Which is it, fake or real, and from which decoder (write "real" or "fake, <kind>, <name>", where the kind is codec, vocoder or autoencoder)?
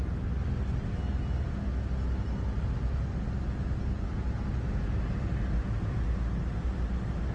real